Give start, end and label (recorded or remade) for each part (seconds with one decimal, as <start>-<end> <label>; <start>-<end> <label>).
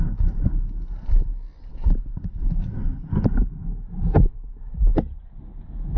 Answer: 0.0-1.7 recorded; 1.7-2.3 remade; 2.3-2.9 recorded; 2.9-3.5 remade; 3.5-6.0 recorded